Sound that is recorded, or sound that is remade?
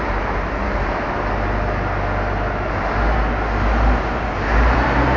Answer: recorded